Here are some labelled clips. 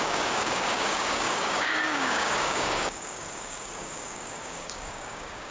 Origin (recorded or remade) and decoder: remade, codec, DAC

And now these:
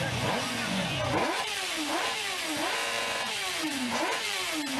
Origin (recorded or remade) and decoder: remade, vocoder, Vocos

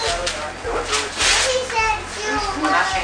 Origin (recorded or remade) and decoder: recorded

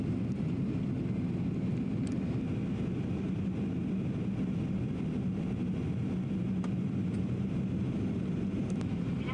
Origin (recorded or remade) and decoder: recorded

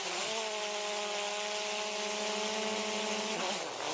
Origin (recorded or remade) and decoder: recorded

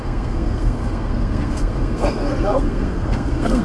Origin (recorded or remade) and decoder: remade, codec, SNAC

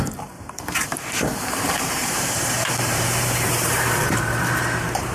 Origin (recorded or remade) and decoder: remade, vocoder, BigVGAN v2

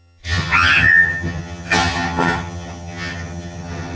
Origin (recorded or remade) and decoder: remade, vocoder, HiFi-GAN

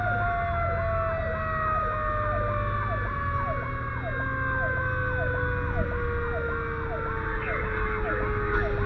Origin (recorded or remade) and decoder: recorded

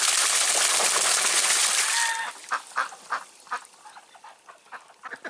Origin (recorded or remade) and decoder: recorded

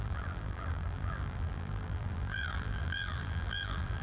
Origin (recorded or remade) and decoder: remade, vocoder, BigVGAN v2